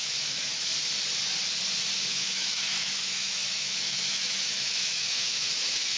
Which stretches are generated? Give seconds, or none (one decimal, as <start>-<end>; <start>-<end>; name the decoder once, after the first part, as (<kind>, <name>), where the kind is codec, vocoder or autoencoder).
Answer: 0.0-0.7 (autoencoder, DAC-VAE); 2.1-6.0